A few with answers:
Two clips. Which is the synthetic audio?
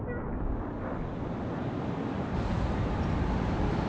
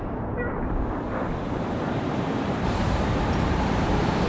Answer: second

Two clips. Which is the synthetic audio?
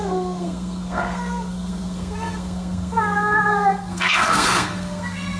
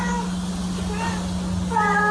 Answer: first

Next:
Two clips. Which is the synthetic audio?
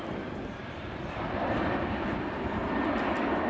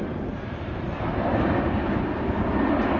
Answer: first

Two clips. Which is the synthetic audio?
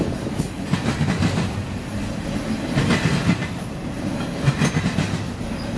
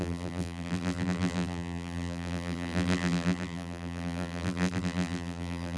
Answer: second